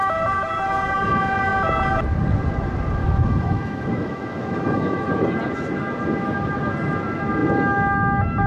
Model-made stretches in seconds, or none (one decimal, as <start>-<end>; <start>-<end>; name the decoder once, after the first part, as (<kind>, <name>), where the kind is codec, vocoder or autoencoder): 3.0-5.1 (autoencoder, DAC-VAE)

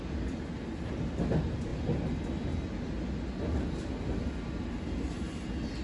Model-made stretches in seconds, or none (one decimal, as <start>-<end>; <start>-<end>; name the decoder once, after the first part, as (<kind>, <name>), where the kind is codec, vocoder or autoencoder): none

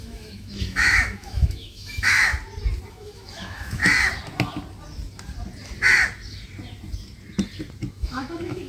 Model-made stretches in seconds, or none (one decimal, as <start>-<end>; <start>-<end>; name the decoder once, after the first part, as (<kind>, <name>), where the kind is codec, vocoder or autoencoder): 0.0-2.3 (autoencoder, DAC-VAE); 2.9-3.8; 7.9-8.7

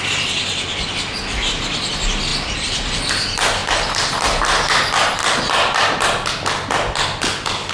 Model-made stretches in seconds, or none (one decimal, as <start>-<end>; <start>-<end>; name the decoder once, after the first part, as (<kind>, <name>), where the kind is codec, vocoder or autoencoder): none

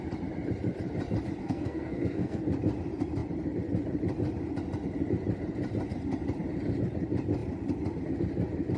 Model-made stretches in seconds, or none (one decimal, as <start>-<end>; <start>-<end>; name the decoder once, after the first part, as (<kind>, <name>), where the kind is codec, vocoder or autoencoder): 1.4-2.4 (codec, SNAC)

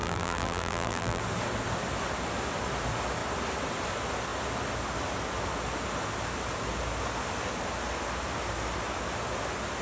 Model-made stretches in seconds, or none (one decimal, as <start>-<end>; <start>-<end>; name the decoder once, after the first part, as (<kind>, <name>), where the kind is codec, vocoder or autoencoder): 0.0-1.2 (vocoder, BigVGAN v2)

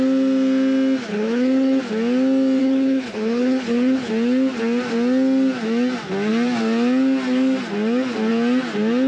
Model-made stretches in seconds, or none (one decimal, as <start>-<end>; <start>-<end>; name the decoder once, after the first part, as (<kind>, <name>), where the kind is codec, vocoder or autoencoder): 1.1-1.8 (codec, HILCodec); 2.6-4.1

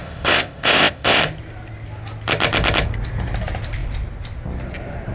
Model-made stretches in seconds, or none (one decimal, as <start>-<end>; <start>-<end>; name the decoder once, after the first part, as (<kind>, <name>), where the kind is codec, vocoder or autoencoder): 0.0-1.2 (codec, ZipCodec)